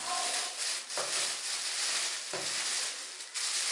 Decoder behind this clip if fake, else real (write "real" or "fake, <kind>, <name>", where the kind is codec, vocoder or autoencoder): real